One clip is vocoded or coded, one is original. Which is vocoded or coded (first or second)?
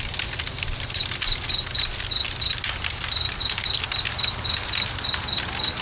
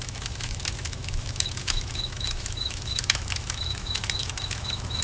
second